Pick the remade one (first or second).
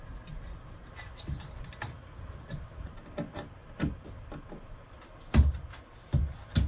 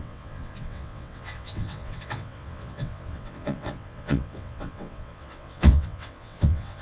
second